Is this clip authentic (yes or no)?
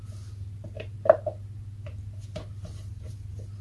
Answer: yes